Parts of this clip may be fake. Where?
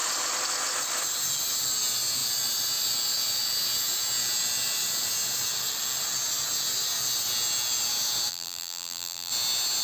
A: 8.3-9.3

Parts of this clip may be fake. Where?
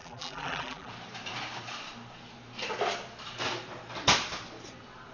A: 0.0-0.9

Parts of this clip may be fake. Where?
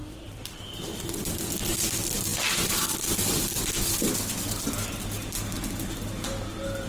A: 0.0-1.3; 2.3-4.3